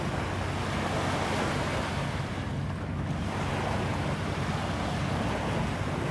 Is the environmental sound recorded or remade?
recorded